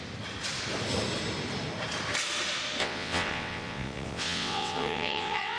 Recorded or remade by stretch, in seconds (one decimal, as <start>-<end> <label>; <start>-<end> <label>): 0.0-2.8 recorded; 2.8-5.6 remade